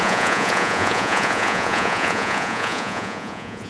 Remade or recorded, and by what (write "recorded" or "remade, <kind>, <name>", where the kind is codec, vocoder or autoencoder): remade, vocoder, Vocos